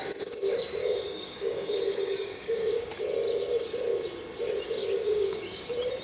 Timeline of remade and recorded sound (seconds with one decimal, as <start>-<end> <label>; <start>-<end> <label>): 0.0-0.8 recorded; 0.8-2.9 remade; 2.9-4.8 recorded; 4.8-5.6 remade; 5.6-6.0 recorded